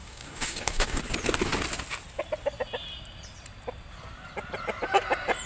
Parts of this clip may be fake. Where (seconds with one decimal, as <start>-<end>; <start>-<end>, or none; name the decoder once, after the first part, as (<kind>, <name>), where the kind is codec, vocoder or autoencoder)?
0.0-1.0 (codec, DAC)